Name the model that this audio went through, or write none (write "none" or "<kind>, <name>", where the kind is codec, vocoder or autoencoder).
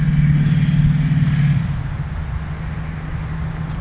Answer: none